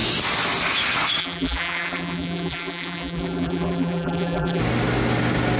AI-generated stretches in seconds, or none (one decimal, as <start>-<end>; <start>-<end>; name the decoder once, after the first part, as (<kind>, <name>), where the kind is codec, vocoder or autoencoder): 1.2-4.6 (vocoder, BigVGAN v2)